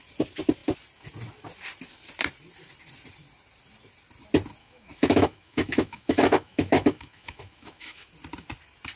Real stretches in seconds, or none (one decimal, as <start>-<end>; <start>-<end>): 0.0-4.6; 8.1-9.0

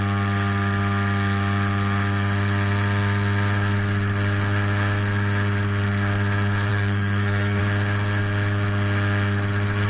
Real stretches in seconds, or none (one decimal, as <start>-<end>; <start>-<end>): 0.0-6.7; 7.6-9.9

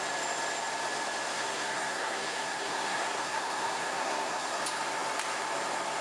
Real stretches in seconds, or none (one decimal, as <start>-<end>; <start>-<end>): 0.0-1.3; 4.6-6.0

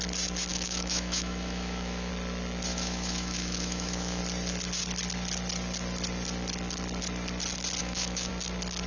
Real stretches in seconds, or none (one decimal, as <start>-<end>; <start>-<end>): 0.0-0.5; 2.1-2.7; 4.2-7.8; 8.3-8.9

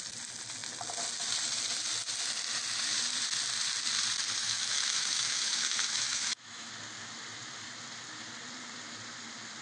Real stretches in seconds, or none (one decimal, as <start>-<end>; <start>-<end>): 0.0-4.4; 6.7-9.6

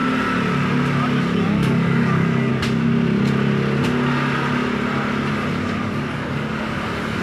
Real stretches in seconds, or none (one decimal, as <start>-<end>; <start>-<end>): 0.0-1.2; 2.5-5.6

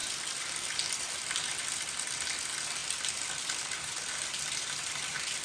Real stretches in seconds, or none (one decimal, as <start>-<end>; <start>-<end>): 0.0-2.8